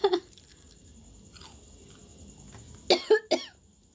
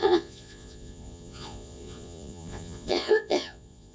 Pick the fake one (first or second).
second